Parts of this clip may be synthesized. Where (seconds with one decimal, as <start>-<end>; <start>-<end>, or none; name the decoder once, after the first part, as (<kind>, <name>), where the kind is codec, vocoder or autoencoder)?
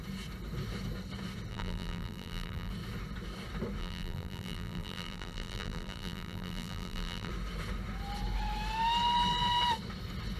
1.5-2.7 (vocoder, BigVGAN v2); 3.8-7.3